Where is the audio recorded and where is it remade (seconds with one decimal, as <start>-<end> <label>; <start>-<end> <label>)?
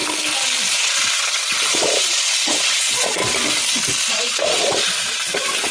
0.0-0.7 recorded; 0.7-3.2 remade; 3.2-4.1 recorded; 4.1-5.7 remade